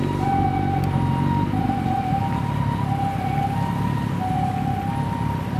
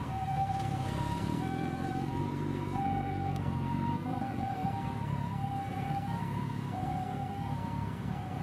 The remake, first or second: second